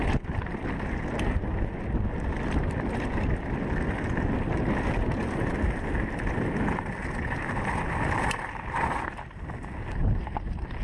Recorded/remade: recorded